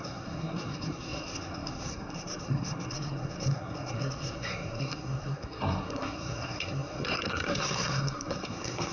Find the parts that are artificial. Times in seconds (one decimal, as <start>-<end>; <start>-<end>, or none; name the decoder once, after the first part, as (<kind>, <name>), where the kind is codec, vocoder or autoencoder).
0.0-8.9 (codec, SNAC)